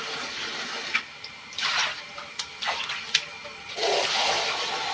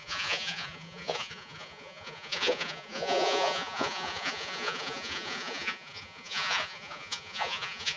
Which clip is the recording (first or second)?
first